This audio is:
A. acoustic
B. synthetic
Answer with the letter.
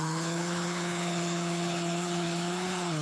B